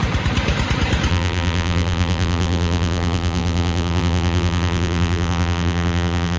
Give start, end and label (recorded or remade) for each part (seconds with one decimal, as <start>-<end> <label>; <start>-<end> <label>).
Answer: 0.0-1.1 recorded; 1.1-6.4 remade